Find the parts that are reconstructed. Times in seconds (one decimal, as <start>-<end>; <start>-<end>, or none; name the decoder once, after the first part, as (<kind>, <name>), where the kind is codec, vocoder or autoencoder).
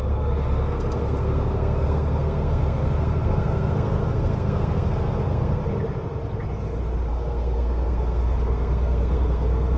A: 0.0-5.6 (codec, SNAC); 7.1-9.8